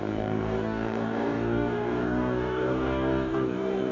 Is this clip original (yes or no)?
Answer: no